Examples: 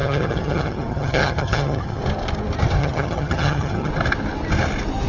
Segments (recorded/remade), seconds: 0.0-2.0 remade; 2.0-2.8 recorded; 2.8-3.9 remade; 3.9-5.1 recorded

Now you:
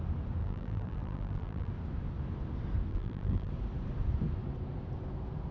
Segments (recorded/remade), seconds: 0.0-0.4 recorded; 0.4-1.7 remade; 1.7-2.9 recorded; 2.9-3.5 remade; 3.5-5.5 recorded

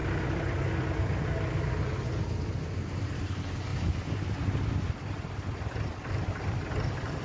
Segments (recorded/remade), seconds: 0.0-2.8 recorded; 2.8-3.7 remade; 3.7-6.1 recorded; 6.1-7.2 remade

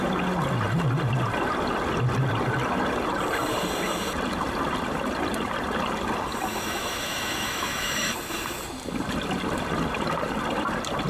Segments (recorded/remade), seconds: 0.0-6.5 recorded; 6.5-8.1 remade; 8.1-11.1 recorded